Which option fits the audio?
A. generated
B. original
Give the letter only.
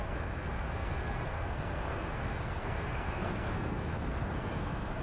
A